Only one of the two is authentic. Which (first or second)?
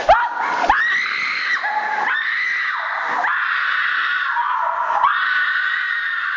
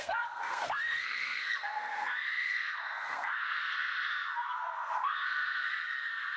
first